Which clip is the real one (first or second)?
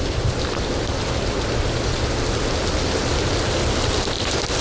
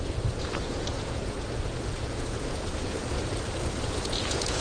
first